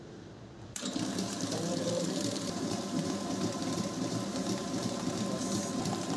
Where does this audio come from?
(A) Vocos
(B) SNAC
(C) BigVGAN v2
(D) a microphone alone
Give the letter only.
C